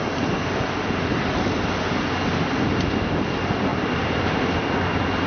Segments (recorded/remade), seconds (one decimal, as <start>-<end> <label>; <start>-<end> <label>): 0.0-5.3 recorded